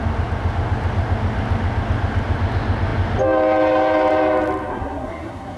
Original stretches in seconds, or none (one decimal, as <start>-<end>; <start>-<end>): 0.0-4.7